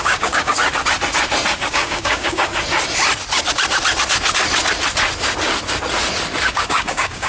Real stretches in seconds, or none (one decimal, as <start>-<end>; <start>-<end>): 0.6-1.6; 2.5-6.5

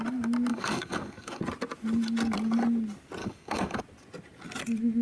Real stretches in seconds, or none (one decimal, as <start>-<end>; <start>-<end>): 0.0-0.5; 1.4-3.2; 3.8-5.0

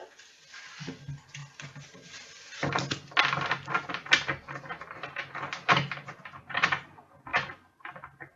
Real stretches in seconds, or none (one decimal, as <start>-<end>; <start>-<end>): 0.0-8.4

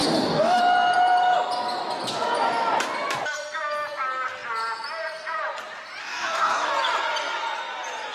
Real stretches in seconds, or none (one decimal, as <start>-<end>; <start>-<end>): 0.6-6.0; 6.7-8.1

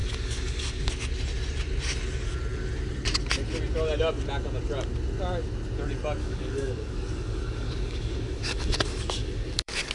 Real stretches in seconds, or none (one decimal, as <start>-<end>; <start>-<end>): 0.9-6.2

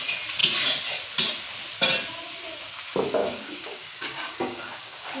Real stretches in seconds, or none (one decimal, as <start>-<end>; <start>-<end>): 0.0-3.2

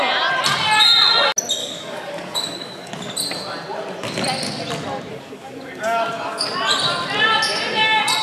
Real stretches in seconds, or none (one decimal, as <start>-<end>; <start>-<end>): 0.0-1.6; 2.9-5.1; 6.5-8.2